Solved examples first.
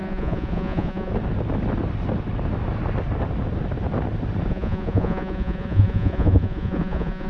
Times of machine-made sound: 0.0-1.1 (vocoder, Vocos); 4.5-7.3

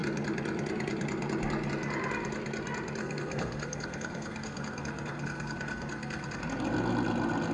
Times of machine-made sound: 3.0-6.4 (codec, SNAC)

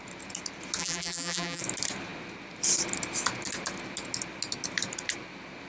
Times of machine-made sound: 0.8-1.6 (vocoder, BigVGAN v2)

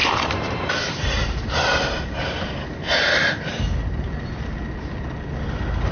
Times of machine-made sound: 0.0-3.5 (vocoder, BigVGAN v2)

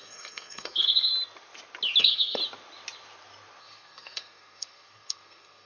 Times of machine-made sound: 0.0-1.1 (codec, SNAC); 2.0-2.4; 3.6-5.7

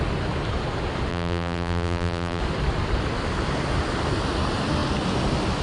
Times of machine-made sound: 1.1-2.4 (vocoder, BigVGAN v2)